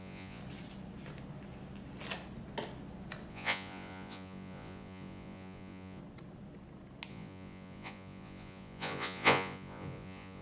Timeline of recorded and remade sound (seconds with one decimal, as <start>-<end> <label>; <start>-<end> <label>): 0.0-0.4 remade; 0.4-3.3 recorded; 3.3-6.0 remade; 6.0-7.1 recorded; 7.1-10.4 remade